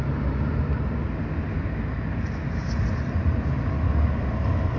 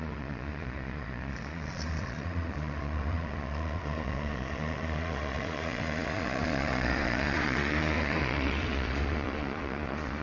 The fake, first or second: second